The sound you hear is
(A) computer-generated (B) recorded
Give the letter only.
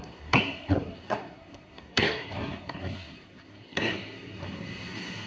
A